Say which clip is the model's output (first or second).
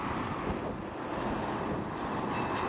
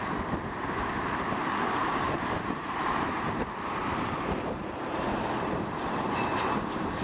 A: second